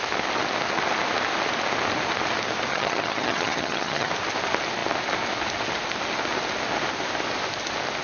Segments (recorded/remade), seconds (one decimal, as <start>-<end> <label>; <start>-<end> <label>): 0.0-2.7 recorded; 2.7-4.1 remade; 4.1-8.0 recorded